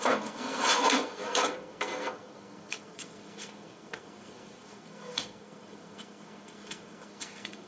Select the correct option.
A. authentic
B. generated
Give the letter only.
B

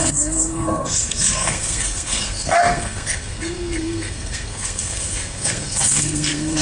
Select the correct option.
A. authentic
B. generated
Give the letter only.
B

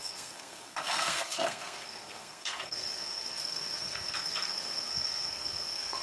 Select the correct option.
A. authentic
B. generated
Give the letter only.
B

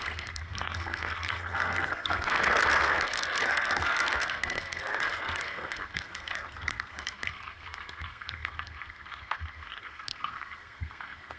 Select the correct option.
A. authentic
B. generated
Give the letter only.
B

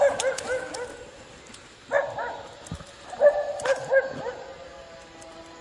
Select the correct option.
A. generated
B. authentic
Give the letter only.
B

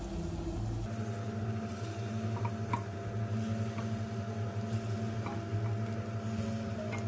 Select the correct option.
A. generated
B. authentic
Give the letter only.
B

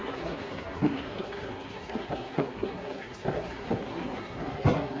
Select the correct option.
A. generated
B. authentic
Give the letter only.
A